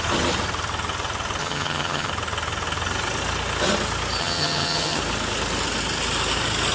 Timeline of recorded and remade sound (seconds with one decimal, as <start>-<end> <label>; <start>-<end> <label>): 0.0-1.4 recorded; 1.4-2.1 remade; 2.1-4.2 recorded; 4.2-5.0 remade; 5.0-6.7 recorded